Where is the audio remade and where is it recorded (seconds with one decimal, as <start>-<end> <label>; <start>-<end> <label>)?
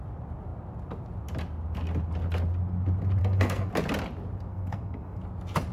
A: 0.0-3.2 recorded; 3.2-3.7 remade; 3.7-4.5 recorded; 4.5-5.2 remade; 5.2-5.7 recorded